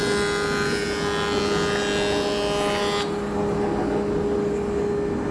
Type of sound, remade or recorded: recorded